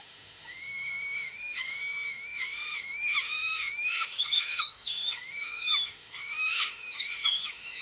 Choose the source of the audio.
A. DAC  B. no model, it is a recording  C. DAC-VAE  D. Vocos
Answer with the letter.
C